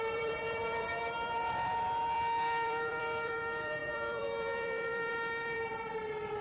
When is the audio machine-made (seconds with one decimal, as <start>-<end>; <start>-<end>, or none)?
0.0-6.4